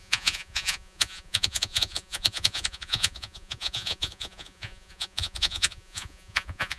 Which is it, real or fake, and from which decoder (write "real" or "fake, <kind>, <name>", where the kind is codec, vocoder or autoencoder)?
fake, vocoder, Vocos